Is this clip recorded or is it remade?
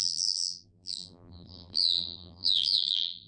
remade